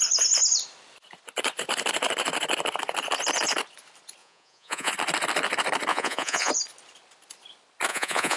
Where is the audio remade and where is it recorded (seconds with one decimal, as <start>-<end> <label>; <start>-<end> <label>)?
0.0-4.2 recorded; 4.2-4.9 remade; 4.9-5.9 recorded; 5.9-6.5 remade; 6.5-7.9 recorded; 7.9-8.4 remade